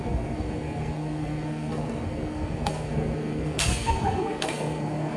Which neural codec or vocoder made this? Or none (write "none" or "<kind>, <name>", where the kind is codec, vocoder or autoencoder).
codec, SNAC